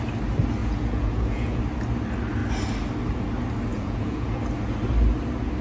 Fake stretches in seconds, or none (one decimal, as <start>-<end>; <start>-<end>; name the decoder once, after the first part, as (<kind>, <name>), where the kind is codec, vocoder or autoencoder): 0.6-1.6 (vocoder, Vocos); 3.7-4.4